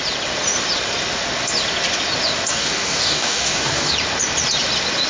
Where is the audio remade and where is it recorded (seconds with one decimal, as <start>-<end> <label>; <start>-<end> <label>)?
0.0-2.5 recorded; 2.5-3.9 remade; 3.9-5.1 recorded